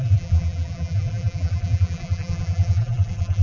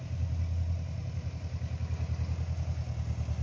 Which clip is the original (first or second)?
second